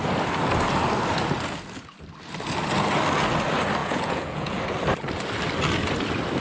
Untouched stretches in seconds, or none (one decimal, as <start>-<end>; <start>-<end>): 0.0-3.8; 4.6-6.4